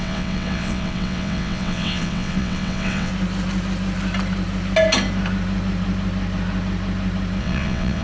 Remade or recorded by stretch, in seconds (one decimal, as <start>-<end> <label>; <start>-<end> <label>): 0.0-3.1 remade; 3.1-7.4 recorded; 7.4-8.0 remade